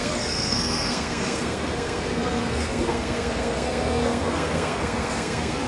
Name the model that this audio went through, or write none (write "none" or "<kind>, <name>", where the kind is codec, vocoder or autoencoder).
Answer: codec, SNAC